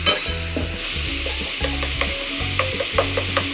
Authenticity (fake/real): real